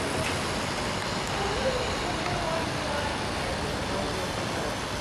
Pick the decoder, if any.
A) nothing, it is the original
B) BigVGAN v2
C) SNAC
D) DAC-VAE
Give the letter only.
A